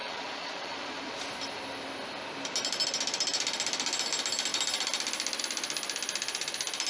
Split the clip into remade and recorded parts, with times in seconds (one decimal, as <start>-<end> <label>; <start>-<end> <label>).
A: 0.0-1.2 remade; 1.2-6.9 recorded